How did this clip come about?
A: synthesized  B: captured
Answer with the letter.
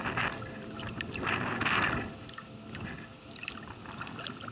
B